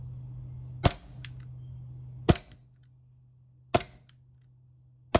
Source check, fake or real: real